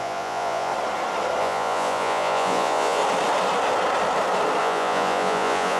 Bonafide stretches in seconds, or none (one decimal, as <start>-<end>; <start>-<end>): 0.7-1.4; 3.0-4.6